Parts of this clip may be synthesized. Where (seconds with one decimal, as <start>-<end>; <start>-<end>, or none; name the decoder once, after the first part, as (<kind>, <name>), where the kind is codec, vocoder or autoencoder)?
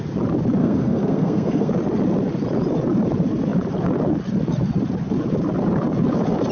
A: 0.6-1.7 (codec, SNAC)